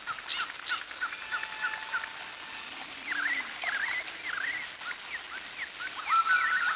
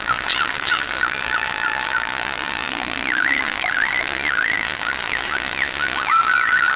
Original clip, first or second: first